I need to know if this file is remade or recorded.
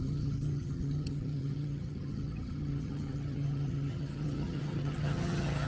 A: remade